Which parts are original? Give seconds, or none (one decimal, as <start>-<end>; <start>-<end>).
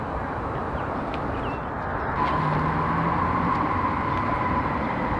0.0-5.2